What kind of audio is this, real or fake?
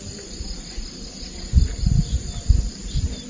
real